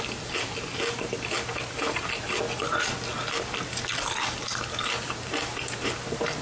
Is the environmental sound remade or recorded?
recorded